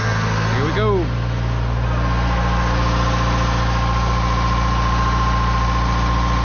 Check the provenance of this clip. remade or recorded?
recorded